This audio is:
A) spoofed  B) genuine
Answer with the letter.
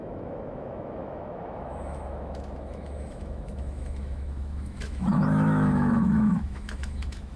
A